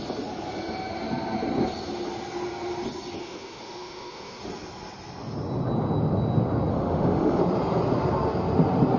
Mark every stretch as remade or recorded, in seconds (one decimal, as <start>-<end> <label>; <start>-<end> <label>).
0.0-3.2 recorded; 3.2-4.4 remade; 4.4-6.7 recorded; 6.7-7.4 remade; 7.4-9.0 recorded